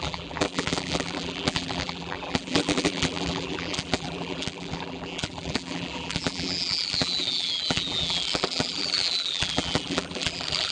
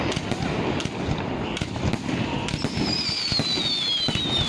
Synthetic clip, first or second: first